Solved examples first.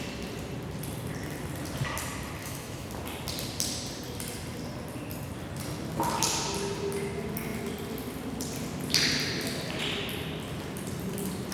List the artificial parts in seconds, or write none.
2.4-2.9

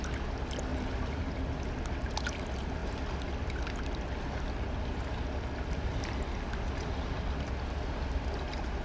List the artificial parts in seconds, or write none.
0.7-1.2

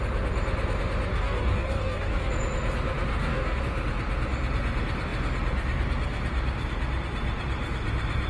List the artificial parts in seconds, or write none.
1.1-2.3; 3.1-3.6

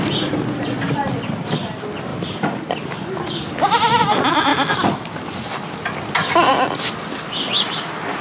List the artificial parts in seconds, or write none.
2.1-4.0; 4.5-5.1; 6.5-7.3

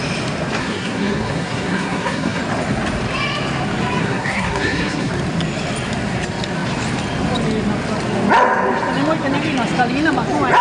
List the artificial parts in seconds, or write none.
0.6-2.4; 4.0-5.1

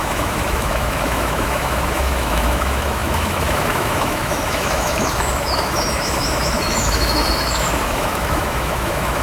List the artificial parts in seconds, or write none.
0.0-9.2

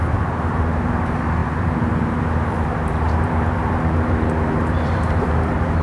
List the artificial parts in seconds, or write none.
0.0-5.8

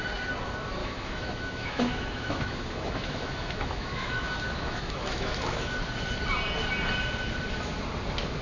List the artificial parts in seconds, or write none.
0.8-5.8